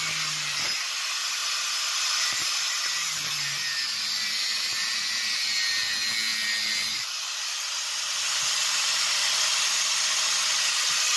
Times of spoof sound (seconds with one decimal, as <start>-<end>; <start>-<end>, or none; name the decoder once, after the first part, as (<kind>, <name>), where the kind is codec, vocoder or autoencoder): none